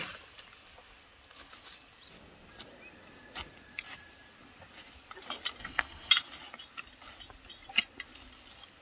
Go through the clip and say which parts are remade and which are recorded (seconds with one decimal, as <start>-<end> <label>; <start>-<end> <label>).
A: 0.0-5.6 recorded; 5.6-6.1 remade; 6.1-8.8 recorded